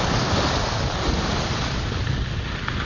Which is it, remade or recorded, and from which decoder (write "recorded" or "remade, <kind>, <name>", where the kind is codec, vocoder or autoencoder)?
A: recorded